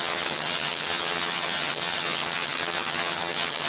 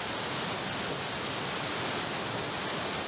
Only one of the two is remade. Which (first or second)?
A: first